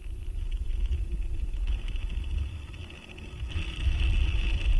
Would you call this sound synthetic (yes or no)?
no